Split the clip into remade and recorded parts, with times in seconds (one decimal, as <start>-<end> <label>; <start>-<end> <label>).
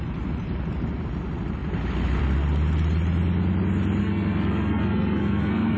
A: 0.0-4.0 recorded; 4.0-5.8 remade